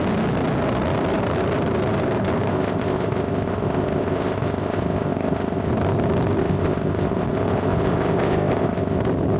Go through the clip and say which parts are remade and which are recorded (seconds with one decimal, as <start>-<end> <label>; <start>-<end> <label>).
0.0-2.5 recorded; 2.5-5.7 remade; 5.7-6.4 recorded; 6.4-9.0 remade; 9.0-9.4 recorded